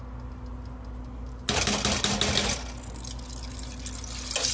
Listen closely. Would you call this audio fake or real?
real